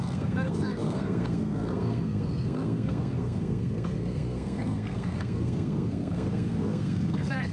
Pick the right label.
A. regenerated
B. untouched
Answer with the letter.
A